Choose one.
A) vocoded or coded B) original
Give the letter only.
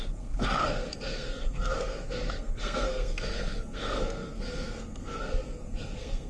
A